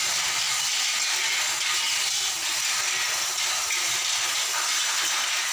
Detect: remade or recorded recorded